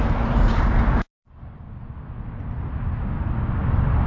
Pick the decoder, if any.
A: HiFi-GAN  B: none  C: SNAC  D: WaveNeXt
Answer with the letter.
B